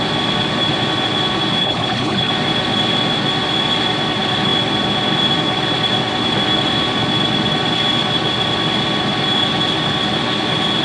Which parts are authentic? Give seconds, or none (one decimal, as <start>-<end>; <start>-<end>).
0.0-1.6; 2.3-10.8